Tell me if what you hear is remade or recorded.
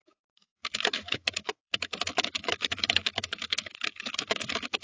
remade